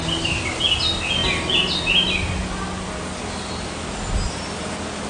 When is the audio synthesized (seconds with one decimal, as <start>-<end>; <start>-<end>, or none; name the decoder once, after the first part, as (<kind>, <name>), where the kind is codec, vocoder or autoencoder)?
none